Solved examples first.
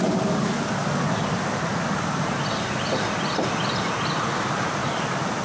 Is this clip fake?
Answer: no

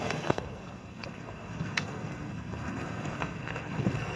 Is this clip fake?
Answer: yes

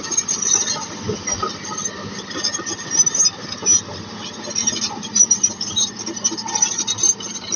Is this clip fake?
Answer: no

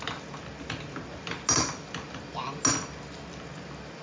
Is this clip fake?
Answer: no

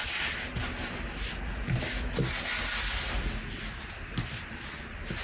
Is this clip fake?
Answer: no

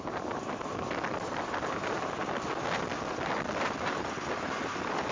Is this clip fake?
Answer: no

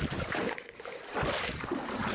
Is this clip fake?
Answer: no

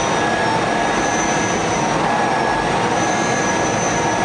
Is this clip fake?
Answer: no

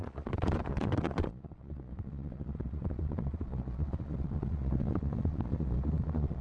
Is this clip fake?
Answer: yes